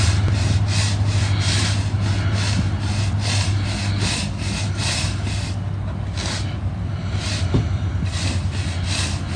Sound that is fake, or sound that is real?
real